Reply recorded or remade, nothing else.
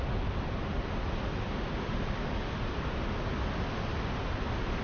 recorded